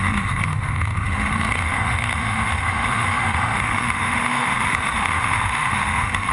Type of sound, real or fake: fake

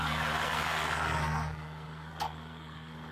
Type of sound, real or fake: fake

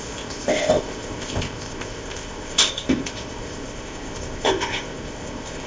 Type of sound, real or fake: fake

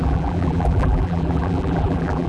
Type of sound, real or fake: fake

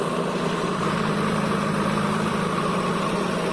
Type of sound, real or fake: fake